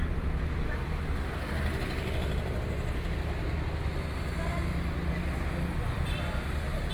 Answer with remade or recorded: recorded